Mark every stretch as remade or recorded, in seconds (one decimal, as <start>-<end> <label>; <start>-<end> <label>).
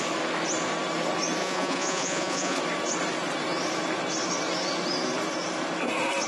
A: 0.0-1.4 recorded; 1.4-2.6 remade; 2.6-6.3 recorded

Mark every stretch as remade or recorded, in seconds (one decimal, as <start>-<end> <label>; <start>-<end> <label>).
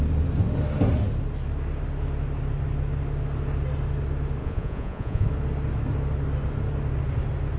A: 0.0-4.4 recorded; 4.4-5.3 remade; 5.3-7.6 recorded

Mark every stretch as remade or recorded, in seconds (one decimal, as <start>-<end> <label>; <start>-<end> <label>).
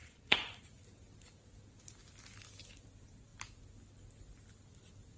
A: 0.0-0.6 remade; 0.6-5.2 recorded